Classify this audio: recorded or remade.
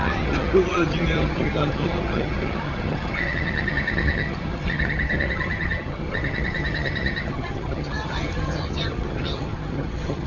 remade